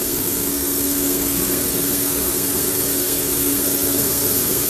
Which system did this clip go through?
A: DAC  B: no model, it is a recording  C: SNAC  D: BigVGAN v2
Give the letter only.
C